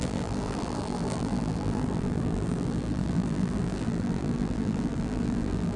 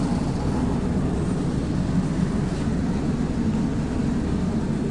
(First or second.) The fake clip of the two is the first